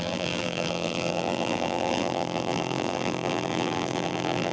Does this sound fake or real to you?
fake